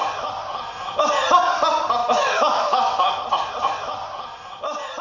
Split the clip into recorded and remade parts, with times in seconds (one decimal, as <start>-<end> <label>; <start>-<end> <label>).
0.0-2.0 recorded; 2.0-3.1 remade; 3.1-5.0 recorded